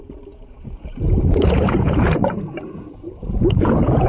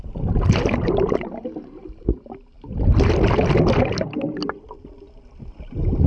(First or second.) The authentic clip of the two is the second